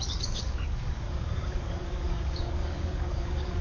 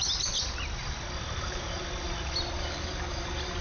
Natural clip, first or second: second